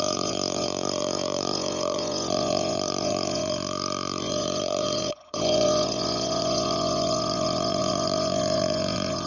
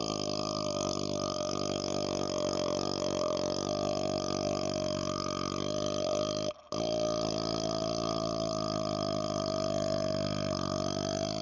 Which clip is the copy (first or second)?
first